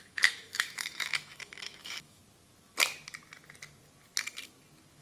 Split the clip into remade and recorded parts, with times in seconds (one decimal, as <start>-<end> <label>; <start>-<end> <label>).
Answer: 0.0-2.2 remade; 2.2-5.0 recorded